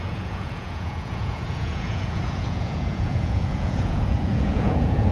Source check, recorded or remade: remade